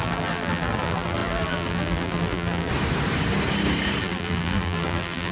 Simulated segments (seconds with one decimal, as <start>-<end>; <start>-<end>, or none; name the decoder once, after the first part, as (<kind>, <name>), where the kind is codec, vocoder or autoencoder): 0.0-2.7 (vocoder, BigVGAN v2); 4.0-5.3